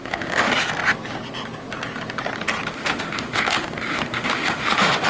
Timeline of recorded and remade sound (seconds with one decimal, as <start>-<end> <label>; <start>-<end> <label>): 0.0-0.5 remade; 0.5-2.7 recorded; 2.7-5.1 remade